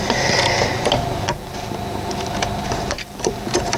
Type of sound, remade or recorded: remade